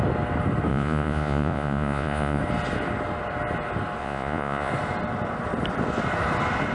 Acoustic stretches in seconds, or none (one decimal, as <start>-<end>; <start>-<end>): 0.0-0.7; 2.4-4.0; 4.7-6.7